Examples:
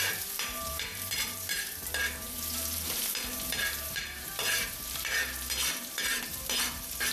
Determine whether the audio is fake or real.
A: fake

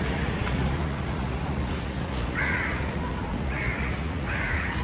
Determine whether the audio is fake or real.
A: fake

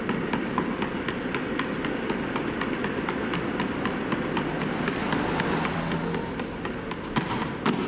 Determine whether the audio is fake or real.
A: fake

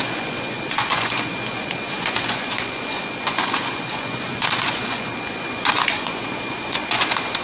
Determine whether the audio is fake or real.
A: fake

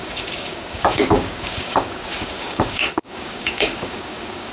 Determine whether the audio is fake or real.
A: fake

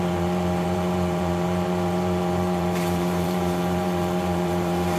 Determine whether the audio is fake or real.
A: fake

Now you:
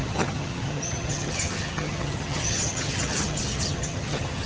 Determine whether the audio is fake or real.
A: fake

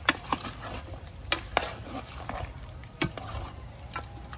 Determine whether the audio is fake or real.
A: real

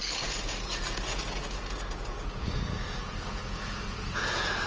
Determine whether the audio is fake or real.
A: fake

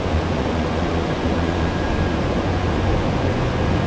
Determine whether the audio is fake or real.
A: fake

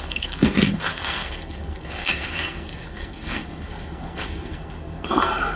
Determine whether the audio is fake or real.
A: fake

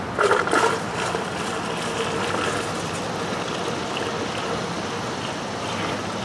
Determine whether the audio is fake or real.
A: real